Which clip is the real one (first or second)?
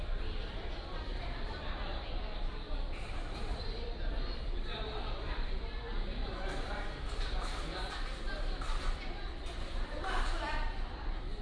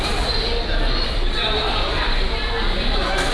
second